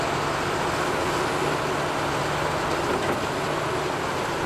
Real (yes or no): yes